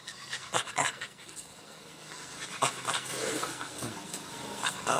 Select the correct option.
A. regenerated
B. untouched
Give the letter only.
A